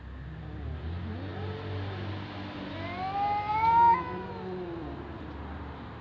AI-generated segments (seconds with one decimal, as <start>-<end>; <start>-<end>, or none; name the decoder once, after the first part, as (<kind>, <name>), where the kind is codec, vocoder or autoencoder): none